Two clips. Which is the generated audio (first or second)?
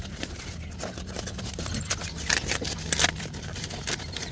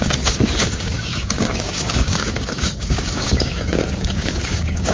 second